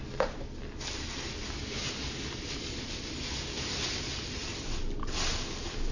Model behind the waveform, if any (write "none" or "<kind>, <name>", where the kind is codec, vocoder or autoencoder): none